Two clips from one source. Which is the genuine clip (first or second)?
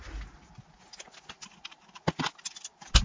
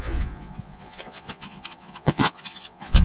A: first